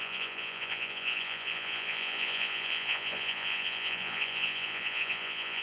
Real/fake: fake